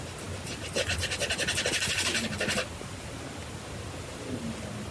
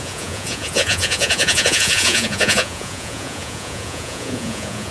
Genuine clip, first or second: first